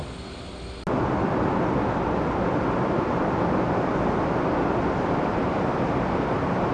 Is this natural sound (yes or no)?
yes